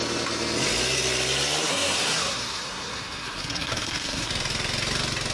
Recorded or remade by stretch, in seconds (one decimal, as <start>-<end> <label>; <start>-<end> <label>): 0.0-1.6 recorded; 1.6-4.3 remade; 4.3-5.3 recorded